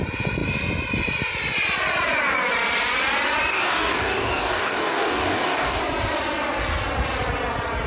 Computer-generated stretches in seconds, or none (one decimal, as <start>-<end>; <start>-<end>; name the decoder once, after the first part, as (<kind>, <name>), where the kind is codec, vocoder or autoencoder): 3.5-5.8 (codec, DAC)